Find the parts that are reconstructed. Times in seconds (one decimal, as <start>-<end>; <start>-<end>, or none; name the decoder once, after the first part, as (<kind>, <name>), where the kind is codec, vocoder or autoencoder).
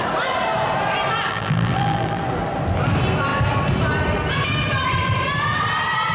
1.3-2.2 (vocoder, BigVGAN v2)